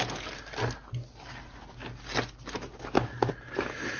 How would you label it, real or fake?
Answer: real